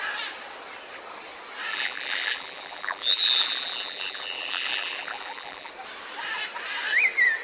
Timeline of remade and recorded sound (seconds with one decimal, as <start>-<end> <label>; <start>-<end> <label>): 0.0-1.7 recorded; 1.7-5.7 remade; 5.7-7.4 recorded